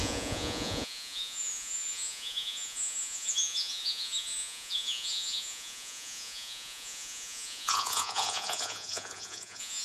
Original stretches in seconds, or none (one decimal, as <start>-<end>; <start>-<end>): none